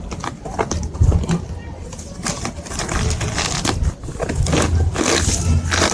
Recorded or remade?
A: recorded